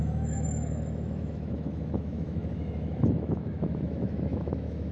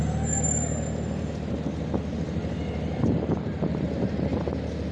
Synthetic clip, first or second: first